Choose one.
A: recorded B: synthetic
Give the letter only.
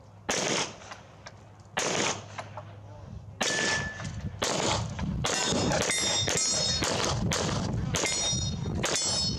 A